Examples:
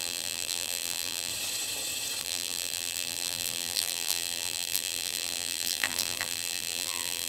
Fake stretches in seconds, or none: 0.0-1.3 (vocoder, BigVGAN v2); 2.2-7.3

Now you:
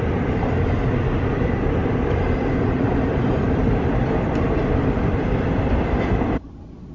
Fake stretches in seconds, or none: 1.8-5.2 (vocoder, BigVGAN v2)

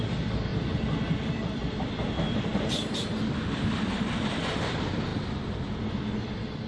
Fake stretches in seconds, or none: 0.0-0.5 (vocoder, BigVGAN v2); 1.3-5.1; 5.9-6.7

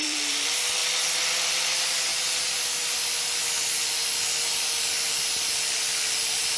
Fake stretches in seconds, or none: 0.0-2.1 (vocoder, BigVGAN v2); 6.1-6.6

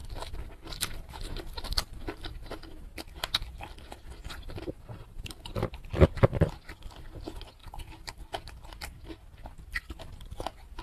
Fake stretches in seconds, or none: 0.0-2.6 (vocoder, BigVGAN v2); 4.2-5.4; 7.6-8.2

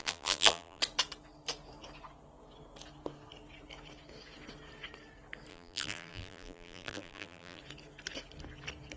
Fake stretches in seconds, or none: 0.0-0.8 (vocoder, BigVGAN v2); 5.5-7.6

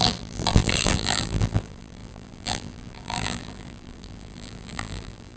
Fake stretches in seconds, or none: 0.0-5.4 (vocoder, BigVGAN v2)

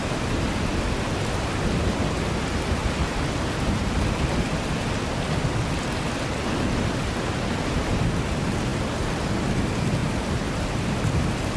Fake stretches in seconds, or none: 10.0-11.2 (vocoder, BigVGAN v2)